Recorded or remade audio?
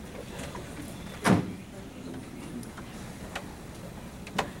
recorded